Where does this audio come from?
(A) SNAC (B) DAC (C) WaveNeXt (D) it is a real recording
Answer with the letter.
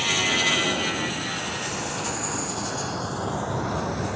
D